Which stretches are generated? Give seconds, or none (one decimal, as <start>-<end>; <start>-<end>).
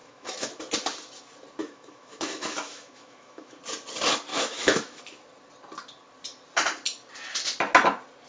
0.0-0.6; 1.6-3.6; 4.3-5.0